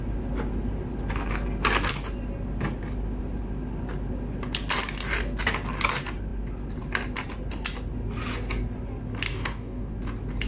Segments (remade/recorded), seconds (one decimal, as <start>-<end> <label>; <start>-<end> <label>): 0.0-9.3 recorded; 9.3-9.9 remade; 9.9-10.5 recorded